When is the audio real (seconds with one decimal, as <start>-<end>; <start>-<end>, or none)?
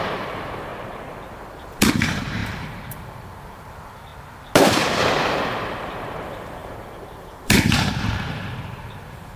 0.7-1.9; 4.1-4.7